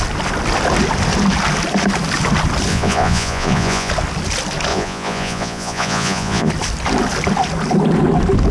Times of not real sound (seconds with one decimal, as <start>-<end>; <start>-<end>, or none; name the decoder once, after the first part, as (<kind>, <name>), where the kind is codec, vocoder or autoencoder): 2.7-3.9 (vocoder, Vocos); 4.7-6.5